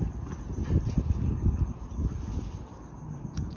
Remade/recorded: recorded